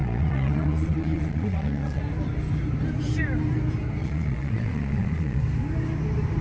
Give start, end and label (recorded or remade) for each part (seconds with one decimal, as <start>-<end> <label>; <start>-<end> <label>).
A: 0.0-2.0 remade; 2.0-4.0 recorded; 4.0-5.4 remade; 5.4-6.4 recorded